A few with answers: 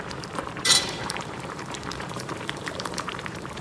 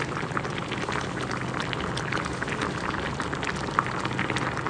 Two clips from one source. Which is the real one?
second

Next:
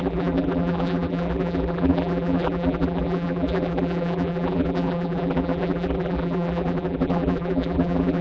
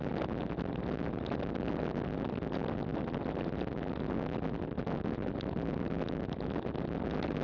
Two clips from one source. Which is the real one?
second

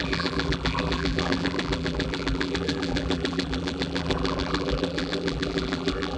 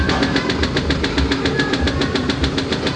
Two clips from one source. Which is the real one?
second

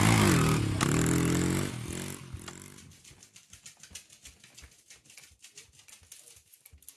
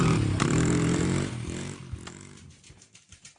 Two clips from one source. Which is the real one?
first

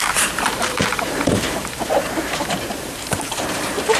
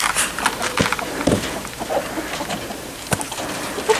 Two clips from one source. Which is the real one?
second